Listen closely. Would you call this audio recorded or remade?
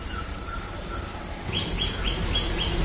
remade